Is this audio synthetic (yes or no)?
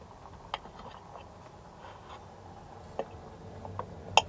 no